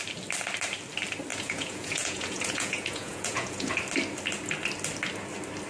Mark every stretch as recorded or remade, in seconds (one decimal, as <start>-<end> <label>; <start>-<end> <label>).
0.0-1.3 recorded; 1.3-3.7 remade; 3.7-5.7 recorded